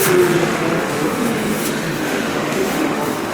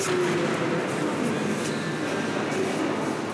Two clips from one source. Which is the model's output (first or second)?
first